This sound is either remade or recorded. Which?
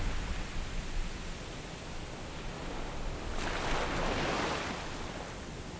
recorded